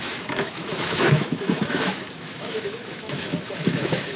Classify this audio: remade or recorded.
remade